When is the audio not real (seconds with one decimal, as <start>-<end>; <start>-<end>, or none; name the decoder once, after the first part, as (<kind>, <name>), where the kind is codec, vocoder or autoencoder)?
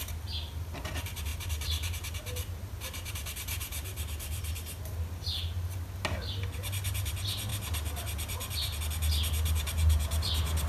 none